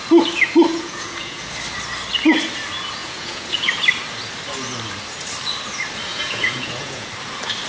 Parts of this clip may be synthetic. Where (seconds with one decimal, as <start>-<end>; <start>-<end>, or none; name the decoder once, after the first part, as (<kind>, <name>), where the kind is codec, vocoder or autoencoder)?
0.7-1.4 (vocoder, Vocos); 3.0-3.7; 6.1-7.1